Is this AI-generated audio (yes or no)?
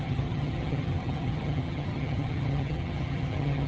yes